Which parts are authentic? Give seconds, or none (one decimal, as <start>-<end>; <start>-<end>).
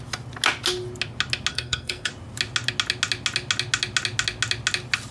0.0-1.5; 2.1-5.1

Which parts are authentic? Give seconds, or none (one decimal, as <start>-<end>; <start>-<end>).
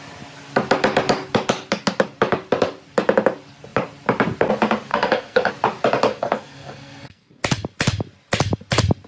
0.0-4.9; 5.5-6.1; 7.4-9.1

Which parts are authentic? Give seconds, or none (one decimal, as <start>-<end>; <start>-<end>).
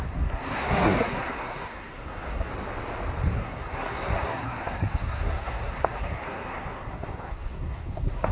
2.5-3.3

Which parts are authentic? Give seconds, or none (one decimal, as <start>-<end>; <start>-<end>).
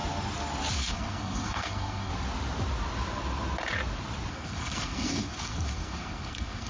0.0-0.7; 2.1-4.3